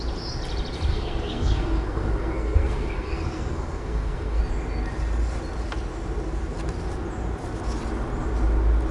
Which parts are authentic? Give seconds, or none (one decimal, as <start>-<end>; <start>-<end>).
0.0-0.9; 4.4-8.9